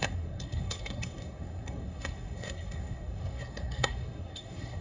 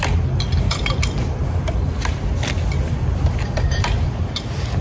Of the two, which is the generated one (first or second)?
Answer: first